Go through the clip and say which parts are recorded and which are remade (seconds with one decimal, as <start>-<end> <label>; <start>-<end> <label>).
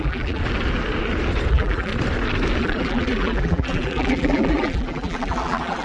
0.0-0.4 remade; 0.4-1.5 recorded; 1.5-1.9 remade; 1.9-2.6 recorded; 2.6-5.8 remade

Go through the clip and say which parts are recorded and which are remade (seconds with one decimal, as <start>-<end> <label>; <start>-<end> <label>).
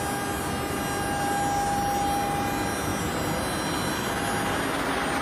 0.0-5.2 recorded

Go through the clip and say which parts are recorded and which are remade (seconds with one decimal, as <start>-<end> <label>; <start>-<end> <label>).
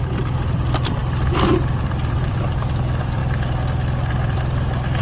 0.0-3.2 remade; 3.2-4.1 recorded; 4.1-5.0 remade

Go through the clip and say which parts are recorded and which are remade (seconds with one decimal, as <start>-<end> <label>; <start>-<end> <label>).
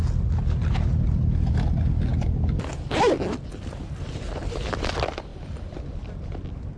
0.0-5.3 recorded; 5.3-5.8 remade; 5.8-6.8 recorded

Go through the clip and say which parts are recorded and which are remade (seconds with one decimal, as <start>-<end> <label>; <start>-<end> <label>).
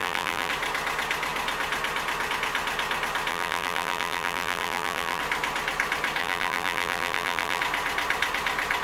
0.0-0.5 remade; 0.5-3.3 recorded; 3.3-5.2 remade; 5.2-6.2 recorded; 6.2-7.6 remade; 7.6-8.8 recorded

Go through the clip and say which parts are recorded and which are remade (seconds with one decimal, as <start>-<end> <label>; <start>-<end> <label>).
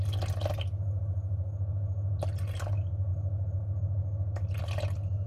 0.0-5.3 recorded